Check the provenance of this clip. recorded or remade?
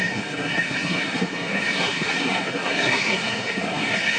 remade